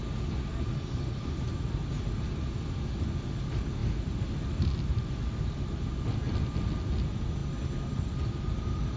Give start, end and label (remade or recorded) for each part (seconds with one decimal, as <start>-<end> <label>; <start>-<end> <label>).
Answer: 0.0-9.0 recorded